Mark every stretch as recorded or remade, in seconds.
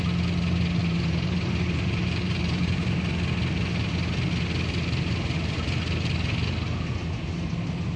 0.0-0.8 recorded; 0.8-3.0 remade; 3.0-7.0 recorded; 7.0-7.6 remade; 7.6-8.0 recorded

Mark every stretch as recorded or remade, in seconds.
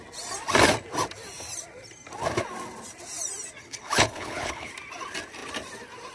0.0-3.6 recorded; 3.6-4.7 remade; 4.7-6.1 recorded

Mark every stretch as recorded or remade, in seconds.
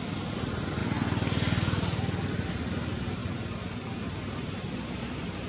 0.0-5.5 recorded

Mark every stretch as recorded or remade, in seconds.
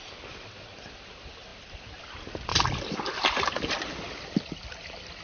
0.0-5.2 recorded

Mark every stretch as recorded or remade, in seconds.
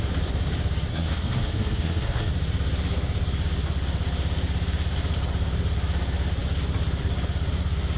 0.0-0.9 recorded; 0.9-2.3 remade; 2.3-8.0 recorded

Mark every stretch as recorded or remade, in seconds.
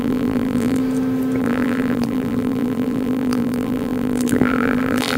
0.0-0.8 remade; 0.8-1.4 recorded; 1.4-5.2 remade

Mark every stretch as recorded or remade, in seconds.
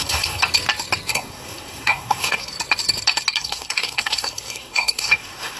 0.0-0.4 remade; 0.4-1.1 recorded; 1.1-2.5 remade; 2.5-3.4 recorded; 3.4-5.6 remade